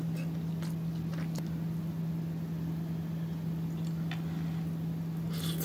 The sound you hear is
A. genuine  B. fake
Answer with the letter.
A